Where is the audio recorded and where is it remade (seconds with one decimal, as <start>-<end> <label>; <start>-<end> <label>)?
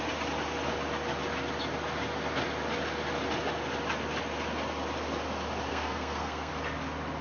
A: 0.0-5.7 recorded; 5.7-6.5 remade; 6.5-7.2 recorded